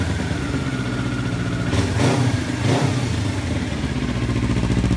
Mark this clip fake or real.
real